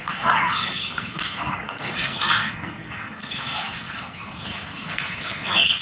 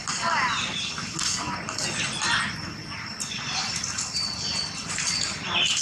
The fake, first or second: first